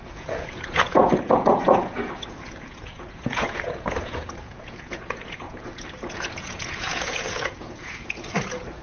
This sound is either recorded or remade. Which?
remade